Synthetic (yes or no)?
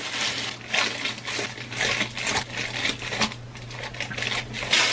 no